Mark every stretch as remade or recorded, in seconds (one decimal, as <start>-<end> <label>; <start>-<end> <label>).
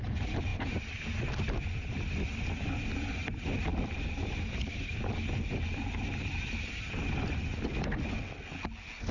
0.0-9.1 recorded